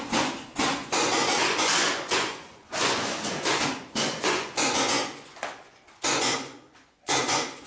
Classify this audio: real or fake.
fake